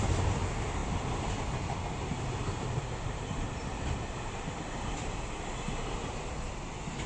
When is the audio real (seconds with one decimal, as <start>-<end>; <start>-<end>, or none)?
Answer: 0.0-7.1

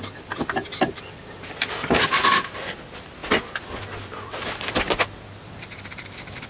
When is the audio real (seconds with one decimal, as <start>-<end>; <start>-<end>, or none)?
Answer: 0.0-6.5

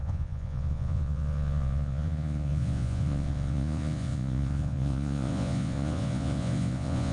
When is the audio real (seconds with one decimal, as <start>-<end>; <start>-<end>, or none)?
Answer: none

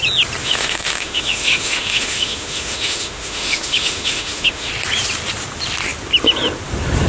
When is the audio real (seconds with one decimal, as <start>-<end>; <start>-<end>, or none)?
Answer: 0.0-0.4; 4.7-7.1

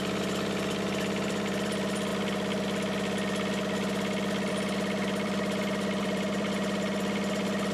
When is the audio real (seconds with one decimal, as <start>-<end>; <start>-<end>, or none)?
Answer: 2.1-4.5

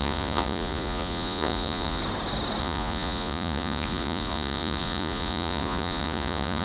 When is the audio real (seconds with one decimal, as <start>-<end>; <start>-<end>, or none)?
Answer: 2.0-2.6

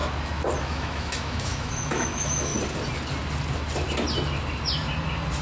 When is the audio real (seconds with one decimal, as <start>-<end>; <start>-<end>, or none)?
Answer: 0.0-0.6; 2.5-5.4